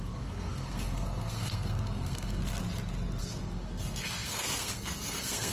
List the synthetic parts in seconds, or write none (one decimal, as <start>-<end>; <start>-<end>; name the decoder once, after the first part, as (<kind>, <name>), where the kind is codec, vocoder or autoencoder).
0.0-2.4 (codec, SNAC); 3.2-5.5